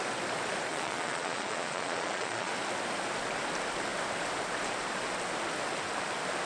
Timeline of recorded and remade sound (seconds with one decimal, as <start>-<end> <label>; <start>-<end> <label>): 0.0-0.7 recorded; 0.7-2.5 remade; 2.5-6.5 recorded